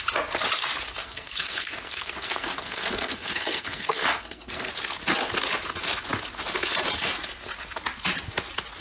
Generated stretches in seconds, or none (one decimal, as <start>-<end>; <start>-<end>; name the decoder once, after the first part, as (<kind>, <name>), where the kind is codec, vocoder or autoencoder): 1.0-4.7 (codec, SNAC)